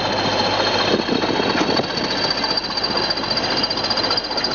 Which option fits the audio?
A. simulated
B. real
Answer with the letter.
B